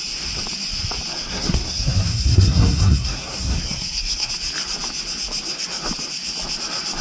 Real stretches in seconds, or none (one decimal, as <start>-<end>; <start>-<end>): 0.0-1.2; 4.3-7.0